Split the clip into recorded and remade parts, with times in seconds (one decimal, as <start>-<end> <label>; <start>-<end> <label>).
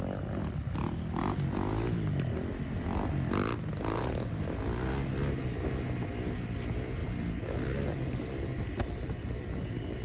0.0-10.0 recorded